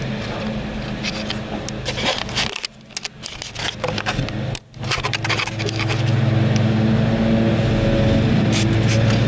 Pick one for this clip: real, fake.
real